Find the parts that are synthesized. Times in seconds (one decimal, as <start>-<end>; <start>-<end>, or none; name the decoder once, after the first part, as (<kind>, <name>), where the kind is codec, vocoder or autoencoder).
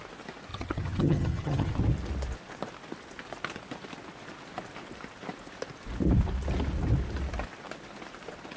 0.5-1.7 (vocoder, HiFi-GAN)